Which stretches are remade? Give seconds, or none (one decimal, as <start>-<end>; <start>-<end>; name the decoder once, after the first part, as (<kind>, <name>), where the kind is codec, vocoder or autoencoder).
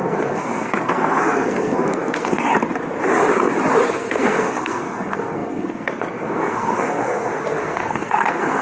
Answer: 0.0-2.5 (codec, SNAC); 3.9-8.6